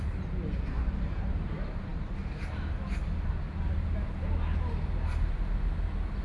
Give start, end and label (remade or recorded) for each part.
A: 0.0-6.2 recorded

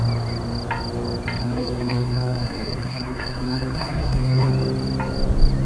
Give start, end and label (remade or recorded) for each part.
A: 0.0-1.4 recorded; 1.4-4.5 remade; 4.5-5.7 recorded

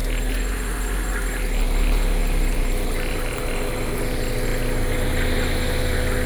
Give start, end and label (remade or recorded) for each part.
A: 0.0-6.3 recorded

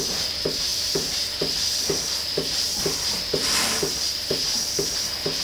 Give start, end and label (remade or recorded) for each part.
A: 0.0-0.7 recorded; 0.7-1.4 remade; 1.4-3.4 recorded; 3.4-4.9 remade; 4.9-5.4 recorded

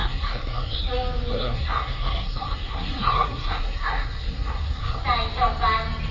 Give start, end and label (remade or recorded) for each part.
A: 0.0-0.8 remade; 0.8-1.3 recorded; 1.3-5.0 remade; 5.0-6.1 recorded

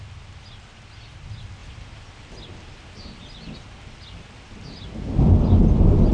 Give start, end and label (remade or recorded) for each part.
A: 0.0-6.1 recorded

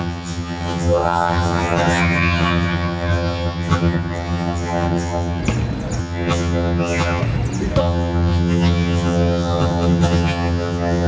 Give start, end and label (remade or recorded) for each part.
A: 0.0-5.4 remade; 5.4-6.0 recorded; 6.0-7.2 remade; 7.2-7.8 recorded; 7.8-11.1 remade

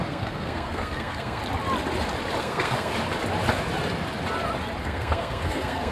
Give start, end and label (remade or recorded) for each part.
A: 0.0-1.4 remade; 1.4-2.4 recorded; 2.4-2.9 remade; 2.9-4.8 recorded; 4.8-5.9 remade